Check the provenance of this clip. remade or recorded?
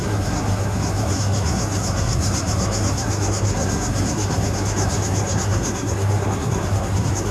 remade